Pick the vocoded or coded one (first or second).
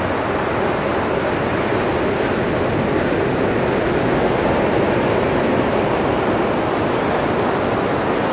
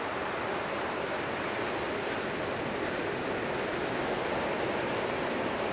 second